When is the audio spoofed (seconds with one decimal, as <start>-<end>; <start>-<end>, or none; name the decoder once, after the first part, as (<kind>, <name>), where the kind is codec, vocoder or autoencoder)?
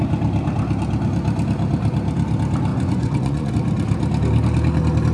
2.7-3.5 (vocoder, Vocos)